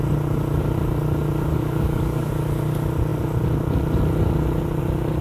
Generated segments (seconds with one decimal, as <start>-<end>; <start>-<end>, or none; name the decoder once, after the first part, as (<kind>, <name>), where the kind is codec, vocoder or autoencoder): 1.5-2.3 (codec, DAC)